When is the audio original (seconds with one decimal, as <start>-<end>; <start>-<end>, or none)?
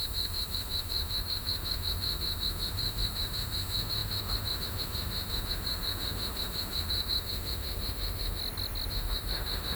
8.4-8.9